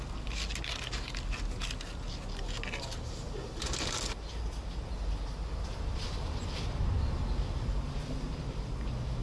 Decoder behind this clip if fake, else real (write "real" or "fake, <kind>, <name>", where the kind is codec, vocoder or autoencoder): real